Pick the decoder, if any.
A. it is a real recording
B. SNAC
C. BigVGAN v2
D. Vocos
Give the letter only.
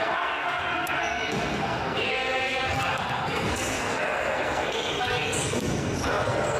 B